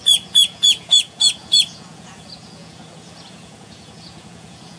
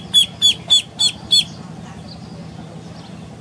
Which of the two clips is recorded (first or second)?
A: second